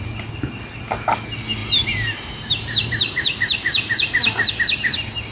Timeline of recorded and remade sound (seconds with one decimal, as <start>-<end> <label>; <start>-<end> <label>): 0.0-1.6 recorded; 1.6-4.5 remade; 4.5-5.3 recorded